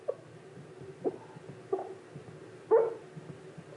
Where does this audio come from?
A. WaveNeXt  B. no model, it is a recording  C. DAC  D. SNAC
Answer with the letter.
B